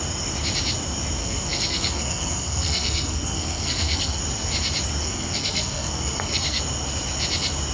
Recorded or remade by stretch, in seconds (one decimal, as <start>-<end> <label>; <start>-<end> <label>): 0.0-1.2 recorded; 1.2-4.2 remade; 4.2-5.0 recorded; 5.0-6.6 remade; 6.6-7.7 recorded